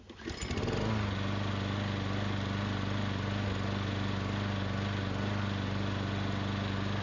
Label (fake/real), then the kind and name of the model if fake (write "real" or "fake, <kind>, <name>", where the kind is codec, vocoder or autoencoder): real